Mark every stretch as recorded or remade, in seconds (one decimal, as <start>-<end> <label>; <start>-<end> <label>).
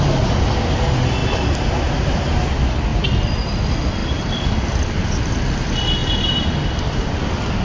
0.0-1.2 recorded; 1.2-1.8 remade; 1.8-4.0 recorded; 4.0-5.0 remade; 5.0-6.0 recorded; 6.0-7.6 remade